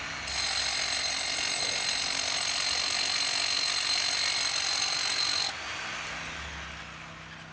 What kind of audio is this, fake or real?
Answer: real